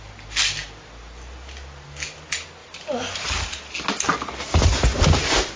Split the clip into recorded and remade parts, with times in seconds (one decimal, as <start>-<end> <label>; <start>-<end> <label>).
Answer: 0.0-2.6 recorded; 2.6-3.6 remade; 3.6-4.7 recorded; 4.7-5.6 remade